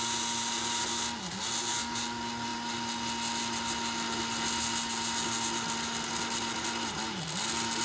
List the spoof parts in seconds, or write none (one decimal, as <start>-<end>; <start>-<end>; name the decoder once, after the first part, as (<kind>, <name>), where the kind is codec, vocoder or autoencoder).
none